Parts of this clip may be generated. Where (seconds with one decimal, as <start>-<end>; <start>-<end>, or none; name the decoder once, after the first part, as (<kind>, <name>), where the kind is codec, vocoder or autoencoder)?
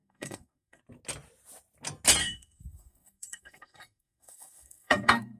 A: 0.0-0.8 (codec, SNAC); 2.2-5.4